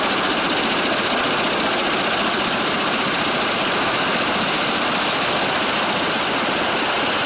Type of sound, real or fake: real